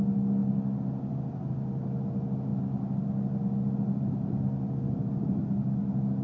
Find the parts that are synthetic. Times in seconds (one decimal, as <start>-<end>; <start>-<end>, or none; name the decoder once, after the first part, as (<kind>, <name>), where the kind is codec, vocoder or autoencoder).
none